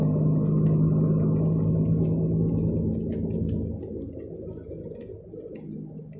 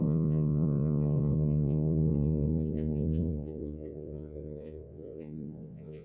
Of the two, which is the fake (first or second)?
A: second